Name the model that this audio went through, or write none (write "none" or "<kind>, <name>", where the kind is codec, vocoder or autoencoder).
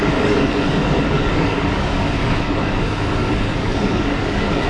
codec, DAC